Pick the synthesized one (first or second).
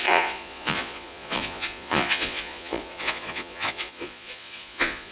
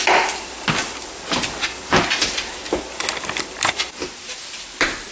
first